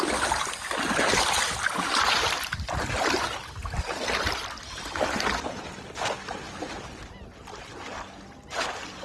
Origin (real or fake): real